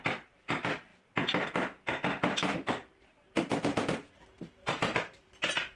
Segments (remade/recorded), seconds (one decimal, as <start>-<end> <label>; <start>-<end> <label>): 0.0-0.9 remade; 0.9-4.4 recorded; 4.4-5.8 remade